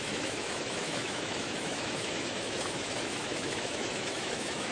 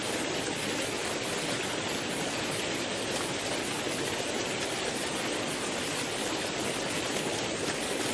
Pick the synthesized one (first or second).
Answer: first